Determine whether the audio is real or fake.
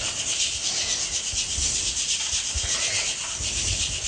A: real